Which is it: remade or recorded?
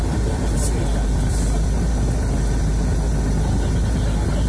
recorded